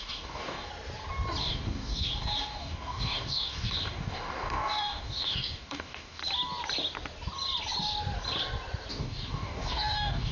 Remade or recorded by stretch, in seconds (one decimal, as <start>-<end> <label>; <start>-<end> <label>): 0.0-0.7 remade; 0.7-1.4 recorded; 1.4-6.2 remade; 6.2-8.9 recorded; 8.9-10.3 remade